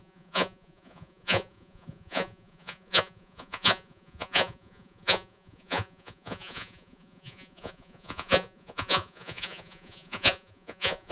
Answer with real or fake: fake